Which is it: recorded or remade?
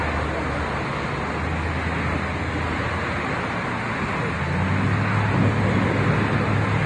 recorded